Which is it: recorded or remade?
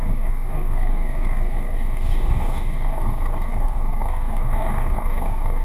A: remade